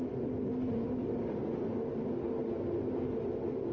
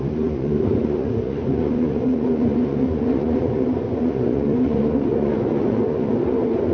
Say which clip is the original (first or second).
first